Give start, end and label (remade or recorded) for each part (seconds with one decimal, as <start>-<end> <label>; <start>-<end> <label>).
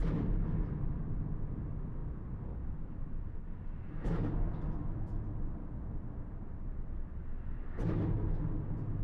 0.0-9.0 recorded